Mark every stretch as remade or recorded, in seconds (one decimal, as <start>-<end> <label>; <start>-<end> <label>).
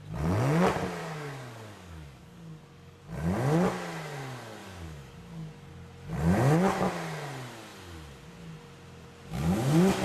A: 0.0-1.0 recorded; 1.0-3.0 remade; 3.0-4.6 recorded; 4.6-5.7 remade; 5.7-10.0 recorded